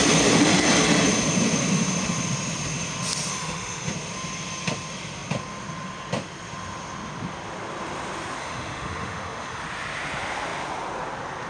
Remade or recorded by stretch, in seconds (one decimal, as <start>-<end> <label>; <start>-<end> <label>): 0.0-3.3 recorded; 3.3-3.9 remade; 3.9-8.4 recorded; 8.4-9.6 remade; 9.6-11.5 recorded